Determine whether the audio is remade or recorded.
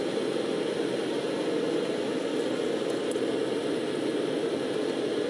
recorded